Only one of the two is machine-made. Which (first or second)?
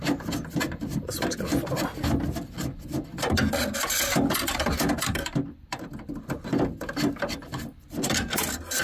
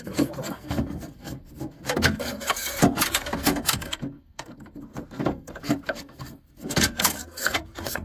second